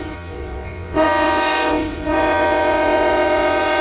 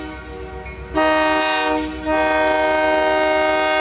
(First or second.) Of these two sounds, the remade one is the first